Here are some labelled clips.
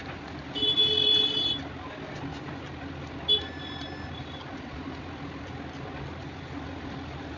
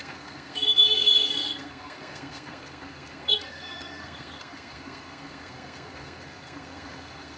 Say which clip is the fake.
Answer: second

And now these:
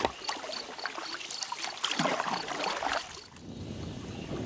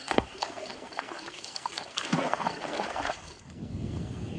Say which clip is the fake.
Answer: second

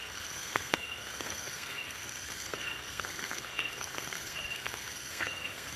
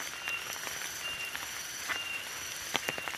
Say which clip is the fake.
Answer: first